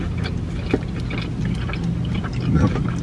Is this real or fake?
real